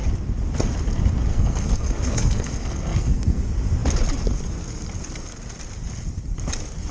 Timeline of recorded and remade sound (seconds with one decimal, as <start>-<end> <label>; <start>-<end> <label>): 0.0-1.3 recorded; 1.3-3.4 remade; 3.4-6.9 recorded